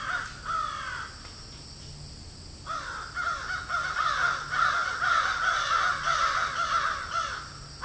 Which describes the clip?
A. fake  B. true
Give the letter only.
B